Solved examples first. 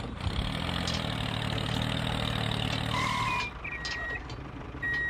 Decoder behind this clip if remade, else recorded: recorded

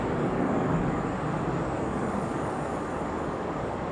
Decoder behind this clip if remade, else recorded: remade, codec, DAC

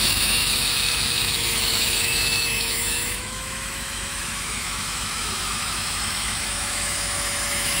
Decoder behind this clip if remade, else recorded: remade, autoencoder, DAC-VAE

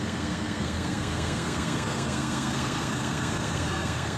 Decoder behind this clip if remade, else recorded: remade, codec, SNAC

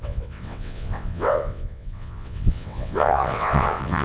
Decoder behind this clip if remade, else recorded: remade, vocoder, WaveNeXt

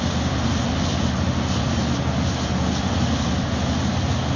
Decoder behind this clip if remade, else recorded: recorded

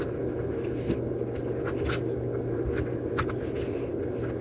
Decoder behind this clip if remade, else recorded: recorded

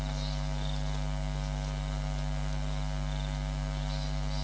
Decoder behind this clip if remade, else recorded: recorded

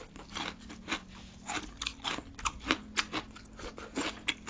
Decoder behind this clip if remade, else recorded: recorded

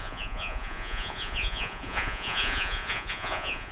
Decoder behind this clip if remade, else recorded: remade, vocoder, Vocos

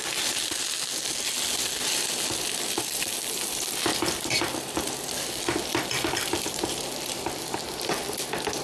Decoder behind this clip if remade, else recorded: recorded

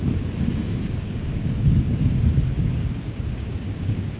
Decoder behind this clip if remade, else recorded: remade, codec, DAC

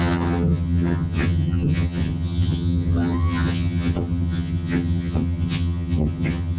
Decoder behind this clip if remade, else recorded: remade, vocoder, HiFi-GAN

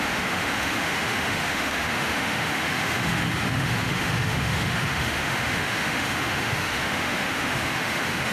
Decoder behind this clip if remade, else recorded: remade, autoencoder, DAC-VAE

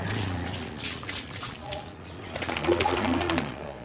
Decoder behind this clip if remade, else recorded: remade, vocoder, Vocos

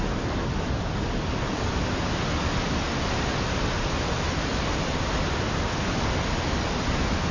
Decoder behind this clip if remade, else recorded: recorded